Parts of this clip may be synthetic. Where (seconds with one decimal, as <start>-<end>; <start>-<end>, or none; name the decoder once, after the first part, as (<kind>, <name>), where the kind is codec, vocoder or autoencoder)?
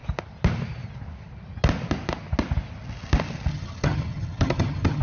3.5-5.0 (vocoder, HiFi-GAN)